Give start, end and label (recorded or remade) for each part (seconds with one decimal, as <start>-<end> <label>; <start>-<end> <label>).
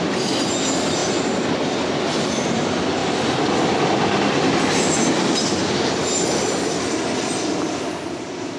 0.0-8.6 recorded